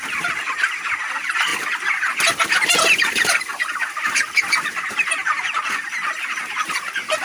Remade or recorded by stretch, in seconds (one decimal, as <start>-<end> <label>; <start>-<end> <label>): 0.0-7.2 recorded